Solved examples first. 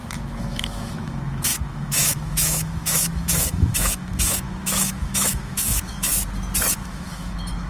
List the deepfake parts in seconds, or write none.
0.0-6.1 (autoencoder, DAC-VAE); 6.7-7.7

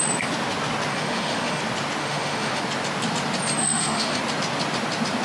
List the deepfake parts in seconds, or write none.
0.9-1.6 (autoencoder, DAC-VAE); 2.0-2.6; 3.6-4.2

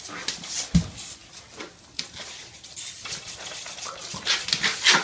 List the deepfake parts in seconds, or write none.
none

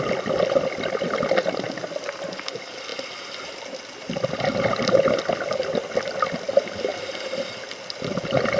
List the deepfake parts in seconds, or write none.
none

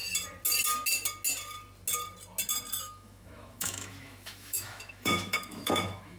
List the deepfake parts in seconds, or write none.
2.8-6.2 (autoencoder, DAC-VAE)